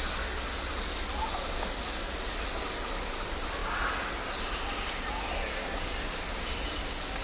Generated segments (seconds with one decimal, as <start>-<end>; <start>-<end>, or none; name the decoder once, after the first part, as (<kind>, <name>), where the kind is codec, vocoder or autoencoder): none